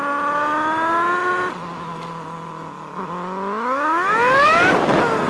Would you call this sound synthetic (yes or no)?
no